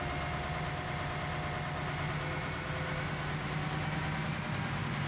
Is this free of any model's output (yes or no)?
yes